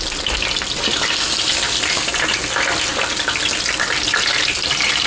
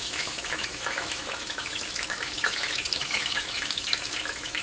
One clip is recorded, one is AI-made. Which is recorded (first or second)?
first